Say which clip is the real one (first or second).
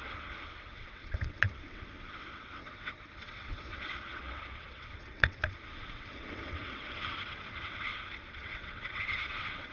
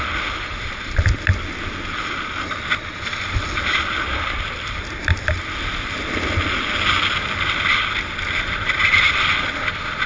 second